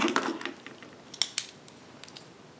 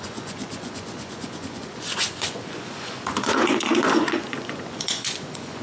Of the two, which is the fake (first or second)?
second